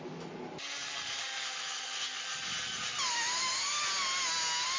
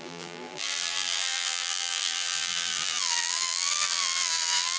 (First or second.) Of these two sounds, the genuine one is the first